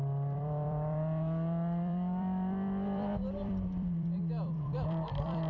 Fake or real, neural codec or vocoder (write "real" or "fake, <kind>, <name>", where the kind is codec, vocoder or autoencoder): fake, vocoder, BigVGAN v2